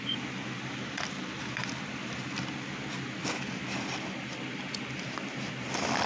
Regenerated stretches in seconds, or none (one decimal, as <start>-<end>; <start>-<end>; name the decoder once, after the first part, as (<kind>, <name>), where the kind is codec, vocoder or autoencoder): none